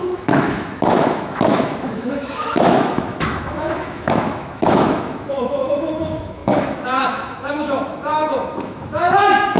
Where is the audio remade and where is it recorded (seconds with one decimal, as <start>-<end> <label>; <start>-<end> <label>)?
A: 0.0-9.6 remade